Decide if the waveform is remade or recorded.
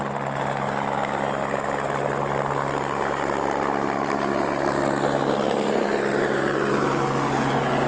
recorded